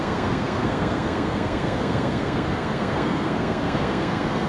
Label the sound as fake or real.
fake